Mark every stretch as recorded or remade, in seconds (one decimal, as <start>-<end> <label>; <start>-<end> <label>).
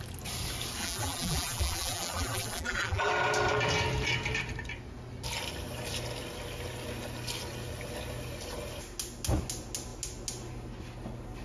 0.0-0.8 recorded; 0.8-3.1 remade; 3.1-11.4 recorded